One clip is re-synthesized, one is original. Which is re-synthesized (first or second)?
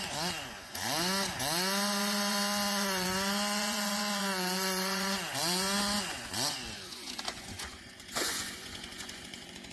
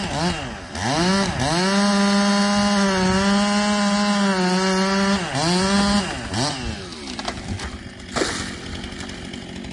first